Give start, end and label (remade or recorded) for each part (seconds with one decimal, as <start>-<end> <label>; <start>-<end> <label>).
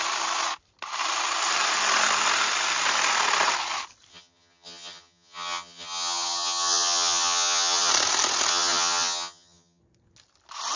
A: 0.0-4.1 recorded; 4.1-7.9 remade; 7.9-8.5 recorded; 8.5-9.8 remade; 9.8-10.8 recorded